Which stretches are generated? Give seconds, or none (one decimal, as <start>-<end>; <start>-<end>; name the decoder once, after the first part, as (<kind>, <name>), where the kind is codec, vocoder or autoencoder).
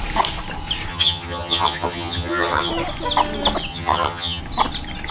0.9-2.7 (vocoder, HiFi-GAN); 3.7-4.4